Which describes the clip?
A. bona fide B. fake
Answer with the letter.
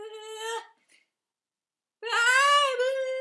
A